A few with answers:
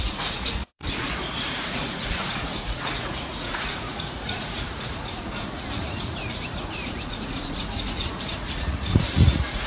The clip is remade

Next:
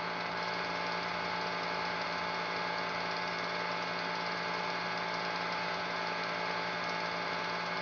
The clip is recorded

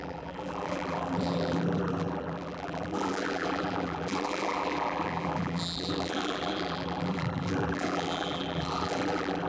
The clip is remade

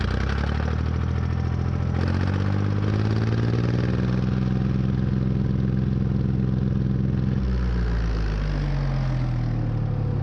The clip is recorded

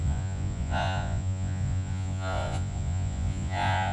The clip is remade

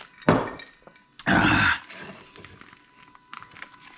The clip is recorded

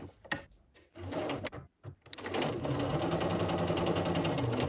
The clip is recorded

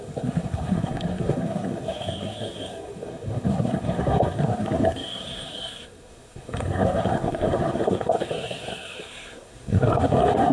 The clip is remade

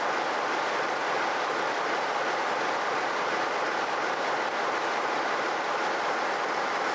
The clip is recorded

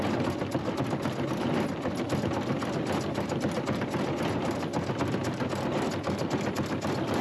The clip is recorded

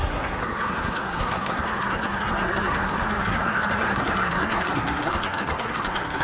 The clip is remade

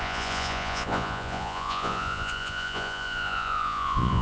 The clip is remade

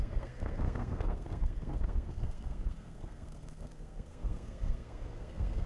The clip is remade